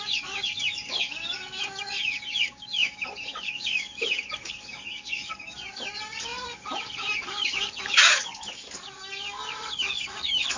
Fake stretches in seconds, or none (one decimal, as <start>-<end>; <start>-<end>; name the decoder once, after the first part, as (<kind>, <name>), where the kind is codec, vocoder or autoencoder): 0.0-10.6 (codec, DAC)